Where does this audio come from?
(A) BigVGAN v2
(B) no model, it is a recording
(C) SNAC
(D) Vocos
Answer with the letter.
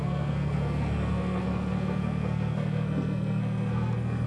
C